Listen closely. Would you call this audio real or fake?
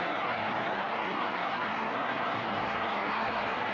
fake